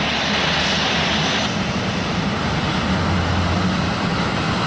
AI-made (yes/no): yes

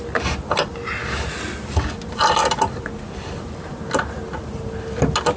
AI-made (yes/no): no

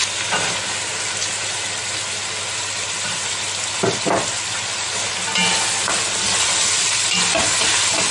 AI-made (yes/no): no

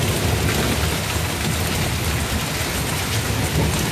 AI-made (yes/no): no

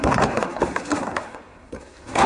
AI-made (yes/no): yes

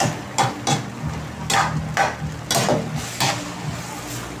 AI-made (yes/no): no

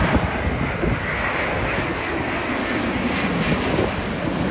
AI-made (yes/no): no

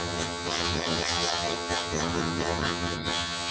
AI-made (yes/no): yes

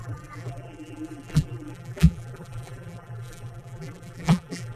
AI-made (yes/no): yes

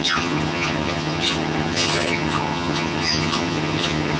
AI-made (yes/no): yes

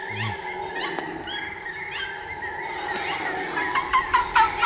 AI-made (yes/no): no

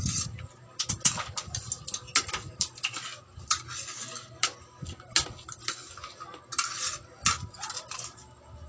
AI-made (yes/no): no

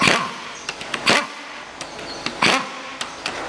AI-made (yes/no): no